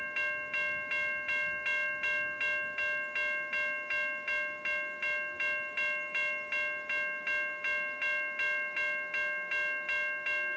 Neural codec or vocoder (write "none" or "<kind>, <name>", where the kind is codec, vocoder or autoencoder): none